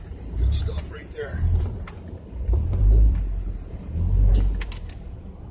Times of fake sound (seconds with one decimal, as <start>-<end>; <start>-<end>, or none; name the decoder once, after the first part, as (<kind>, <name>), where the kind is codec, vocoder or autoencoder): 0.6-3.9 (vocoder, BigVGAN v2); 4.3-5.5